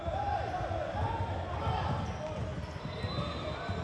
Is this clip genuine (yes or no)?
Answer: yes